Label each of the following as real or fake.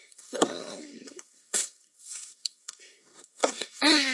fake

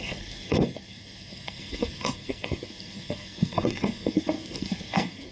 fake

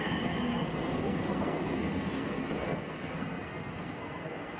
fake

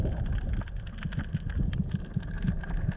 real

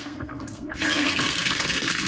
fake